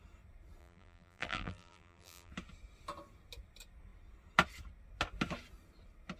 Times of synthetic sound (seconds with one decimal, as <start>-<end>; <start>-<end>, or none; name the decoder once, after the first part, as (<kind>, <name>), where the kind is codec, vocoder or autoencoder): 0.6-2.3 (vocoder, BigVGAN v2)